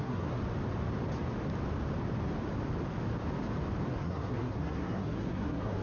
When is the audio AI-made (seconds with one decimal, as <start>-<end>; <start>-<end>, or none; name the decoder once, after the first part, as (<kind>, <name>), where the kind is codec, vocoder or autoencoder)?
0.0-0.4 (codec, SNAC); 3.9-5.8